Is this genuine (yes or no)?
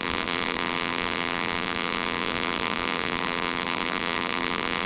no